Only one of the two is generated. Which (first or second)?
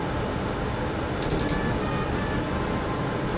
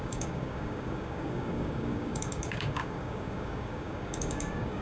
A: second